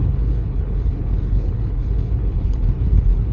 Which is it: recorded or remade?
remade